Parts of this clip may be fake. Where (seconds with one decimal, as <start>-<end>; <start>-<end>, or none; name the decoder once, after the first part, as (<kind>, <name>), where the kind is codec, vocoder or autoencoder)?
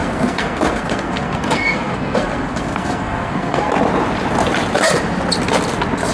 0.0-3.7 (codec, SNAC)